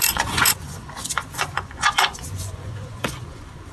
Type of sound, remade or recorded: remade